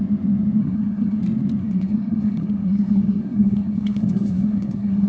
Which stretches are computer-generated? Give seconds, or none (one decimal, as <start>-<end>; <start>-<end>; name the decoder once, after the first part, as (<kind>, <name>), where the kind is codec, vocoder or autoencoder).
0.6-1.2 (codec, SNAC); 1.6-5.1